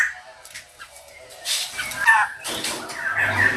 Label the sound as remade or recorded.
remade